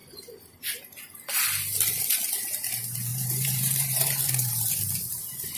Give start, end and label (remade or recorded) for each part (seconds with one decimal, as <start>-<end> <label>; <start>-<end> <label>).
0.0-3.1 recorded; 3.1-4.2 remade; 4.2-5.6 recorded